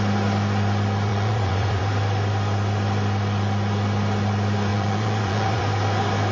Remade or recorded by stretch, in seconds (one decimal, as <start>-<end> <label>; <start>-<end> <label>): 0.0-1.1 recorded; 1.1-1.8 remade; 1.8-4.7 recorded; 4.7-5.6 remade; 5.6-6.3 recorded